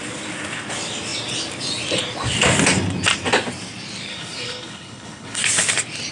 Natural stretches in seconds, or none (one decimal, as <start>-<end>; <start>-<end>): 0.0-4.1; 5.4-6.1